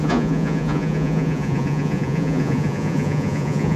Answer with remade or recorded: remade